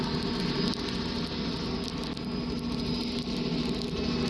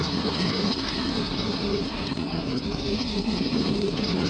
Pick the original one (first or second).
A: first